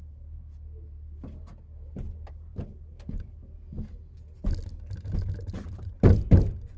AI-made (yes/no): no